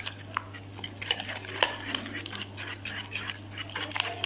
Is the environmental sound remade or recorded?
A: recorded